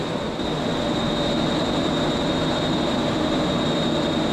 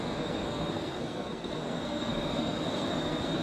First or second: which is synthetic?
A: second